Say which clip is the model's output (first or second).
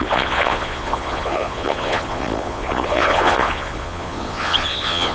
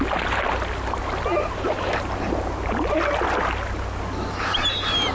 first